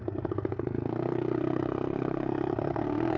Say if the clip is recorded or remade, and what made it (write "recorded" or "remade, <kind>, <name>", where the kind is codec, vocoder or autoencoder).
remade, codec, SNAC